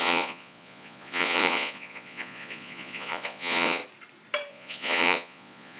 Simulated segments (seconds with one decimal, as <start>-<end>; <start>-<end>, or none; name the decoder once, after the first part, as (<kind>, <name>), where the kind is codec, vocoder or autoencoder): 0.0-3.8 (vocoder, Vocos); 4.5-5.8

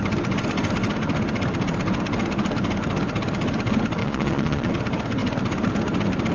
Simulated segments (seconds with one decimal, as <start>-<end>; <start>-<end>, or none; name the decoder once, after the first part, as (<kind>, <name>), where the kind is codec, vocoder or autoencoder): 4.0-4.7 (vocoder, Vocos)

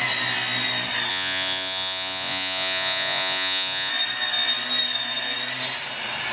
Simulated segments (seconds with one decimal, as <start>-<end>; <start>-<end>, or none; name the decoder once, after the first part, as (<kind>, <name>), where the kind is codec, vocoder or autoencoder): 1.1-3.9 (vocoder, Vocos)

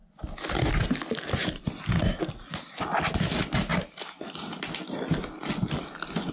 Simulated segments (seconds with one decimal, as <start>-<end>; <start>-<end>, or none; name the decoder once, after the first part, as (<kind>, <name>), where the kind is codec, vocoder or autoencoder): none

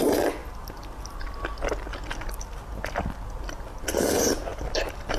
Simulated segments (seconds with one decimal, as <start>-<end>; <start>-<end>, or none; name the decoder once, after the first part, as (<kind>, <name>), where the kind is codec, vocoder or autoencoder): none